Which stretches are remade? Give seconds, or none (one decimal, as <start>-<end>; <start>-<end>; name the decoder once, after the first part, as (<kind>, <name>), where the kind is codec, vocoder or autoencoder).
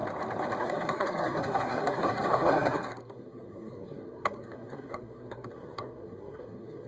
0.6-6.9 (codec, SNAC)